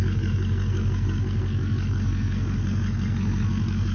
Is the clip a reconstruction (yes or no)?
yes